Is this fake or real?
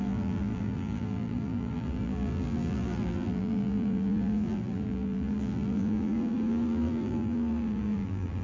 fake